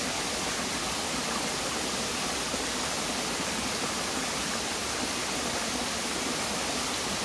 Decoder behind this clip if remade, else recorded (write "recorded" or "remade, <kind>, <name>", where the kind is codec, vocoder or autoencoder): recorded